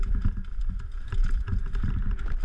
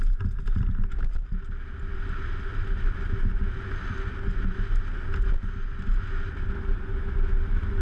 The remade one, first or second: first